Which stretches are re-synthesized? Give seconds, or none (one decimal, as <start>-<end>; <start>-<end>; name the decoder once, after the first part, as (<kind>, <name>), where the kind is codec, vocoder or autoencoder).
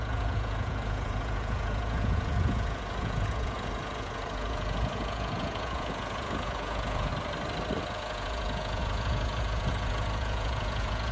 0.0-7.1 (vocoder, Vocos); 7.8-11.1